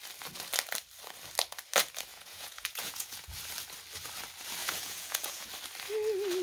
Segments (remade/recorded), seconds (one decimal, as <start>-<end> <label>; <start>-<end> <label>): 0.0-2.1 recorded; 2.1-3.3 remade; 3.3-4.6 recorded; 4.6-5.5 remade; 5.5-6.4 recorded